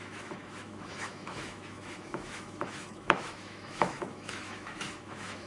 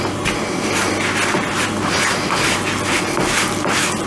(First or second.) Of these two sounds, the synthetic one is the first